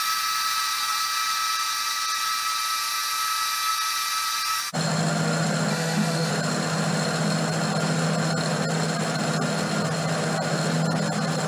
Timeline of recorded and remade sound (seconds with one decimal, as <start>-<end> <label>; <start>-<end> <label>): 0.0-5.7 recorded; 5.7-6.3 remade; 6.3-11.5 recorded